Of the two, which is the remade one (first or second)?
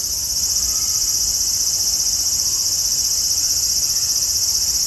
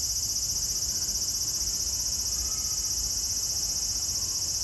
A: first